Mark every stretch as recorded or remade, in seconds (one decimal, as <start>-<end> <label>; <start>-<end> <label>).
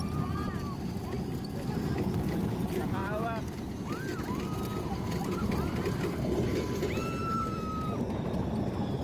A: 0.0-4.1 recorded; 4.1-6.8 remade; 6.8-7.2 recorded; 7.2-9.0 remade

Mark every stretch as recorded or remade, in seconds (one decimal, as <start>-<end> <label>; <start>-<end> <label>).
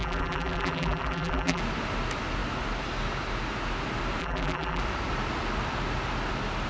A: 0.0-1.6 remade; 1.6-4.2 recorded; 4.2-4.8 remade; 4.8-6.7 recorded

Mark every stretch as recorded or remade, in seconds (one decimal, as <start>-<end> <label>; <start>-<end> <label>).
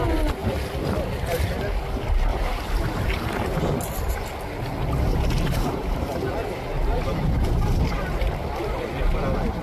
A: 0.0-2.3 recorded; 2.3-3.6 remade; 3.6-5.1 recorded; 5.1-6.3 remade; 6.3-7.1 recorded; 7.1-8.3 remade; 8.3-9.6 recorded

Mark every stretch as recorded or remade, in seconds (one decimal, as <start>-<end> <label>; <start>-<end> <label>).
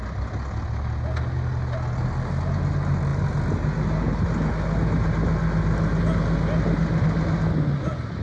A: 0.0-8.2 recorded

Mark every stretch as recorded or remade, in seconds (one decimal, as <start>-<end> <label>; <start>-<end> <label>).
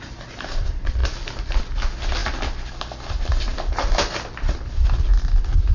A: 0.0-5.7 recorded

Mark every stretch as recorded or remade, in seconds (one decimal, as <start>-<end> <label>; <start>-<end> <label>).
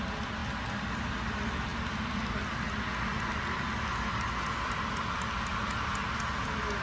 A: 0.0-6.8 recorded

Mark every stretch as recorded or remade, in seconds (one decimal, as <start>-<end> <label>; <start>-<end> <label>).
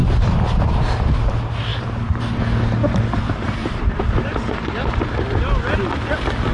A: 0.0-1.7 recorded; 1.7-2.2 remade; 2.2-3.6 recorded; 3.6-5.4 remade; 5.4-6.5 recorded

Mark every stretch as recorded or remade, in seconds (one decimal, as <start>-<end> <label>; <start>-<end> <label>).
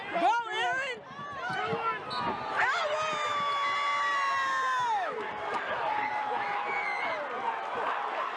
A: 0.0-8.4 recorded